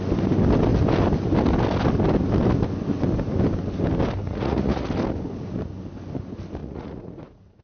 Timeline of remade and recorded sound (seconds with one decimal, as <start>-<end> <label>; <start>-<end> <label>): 0.0-4.2 recorded; 4.2-4.9 remade; 4.9-6.6 recorded; 6.6-7.6 remade